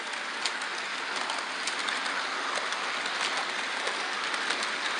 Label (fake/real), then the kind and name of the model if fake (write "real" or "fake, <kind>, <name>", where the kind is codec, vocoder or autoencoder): real